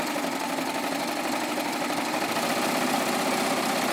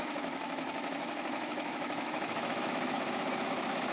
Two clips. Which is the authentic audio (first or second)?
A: first